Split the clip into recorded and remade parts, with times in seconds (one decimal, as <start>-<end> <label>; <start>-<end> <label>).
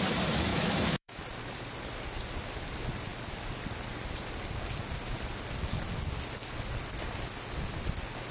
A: 0.0-0.5 recorded; 0.5-1.2 remade; 1.2-8.3 recorded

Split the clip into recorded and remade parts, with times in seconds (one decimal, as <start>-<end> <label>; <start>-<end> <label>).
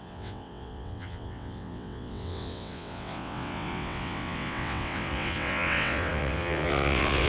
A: 0.0-7.3 remade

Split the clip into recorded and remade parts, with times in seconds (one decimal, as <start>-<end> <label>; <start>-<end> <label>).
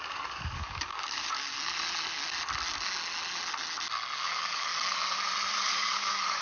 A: 0.0-1.5 remade; 1.5-4.2 recorded; 4.2-4.7 remade; 4.7-5.5 recorded; 5.5-6.4 remade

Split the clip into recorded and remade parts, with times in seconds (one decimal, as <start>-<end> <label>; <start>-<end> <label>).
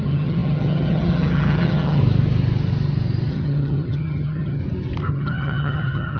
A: 0.0-2.0 remade; 2.0-3.3 recorded; 3.3-4.6 remade; 4.6-5.1 recorded; 5.1-6.2 remade